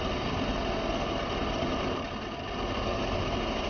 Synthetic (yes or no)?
no